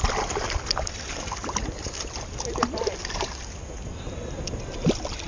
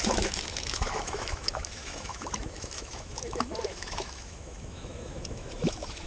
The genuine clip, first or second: first